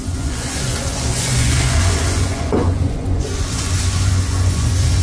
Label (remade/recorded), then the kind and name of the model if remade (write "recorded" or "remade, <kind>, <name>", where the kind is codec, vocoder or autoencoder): remade, vocoder, Vocos